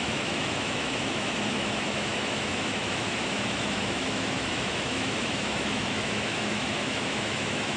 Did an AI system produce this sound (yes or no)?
yes